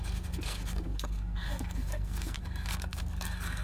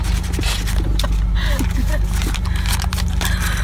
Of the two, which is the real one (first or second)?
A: second